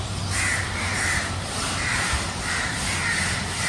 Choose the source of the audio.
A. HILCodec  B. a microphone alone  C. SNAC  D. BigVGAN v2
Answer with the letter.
D